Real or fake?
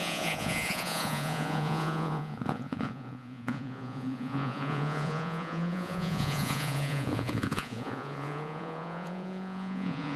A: fake